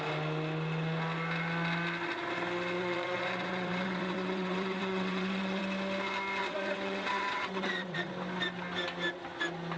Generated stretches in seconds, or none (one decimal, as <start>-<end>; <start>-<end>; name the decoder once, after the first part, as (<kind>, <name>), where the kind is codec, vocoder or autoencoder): 2.8-5.6 (vocoder, WaveNeXt); 6.4-8.1